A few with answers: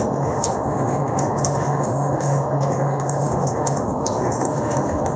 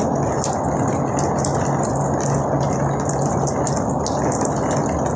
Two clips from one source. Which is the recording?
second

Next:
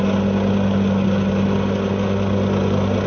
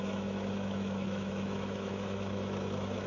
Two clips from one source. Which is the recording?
first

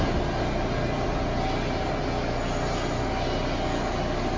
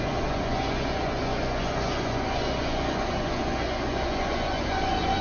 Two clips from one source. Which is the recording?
first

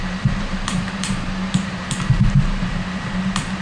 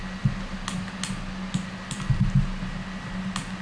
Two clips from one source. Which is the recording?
second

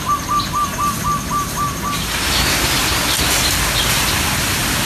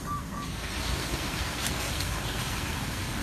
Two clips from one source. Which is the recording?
first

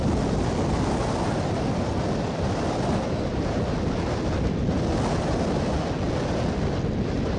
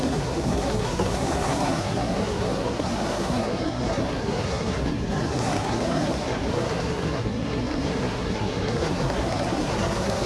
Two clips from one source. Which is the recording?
first